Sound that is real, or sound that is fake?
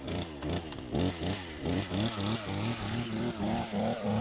fake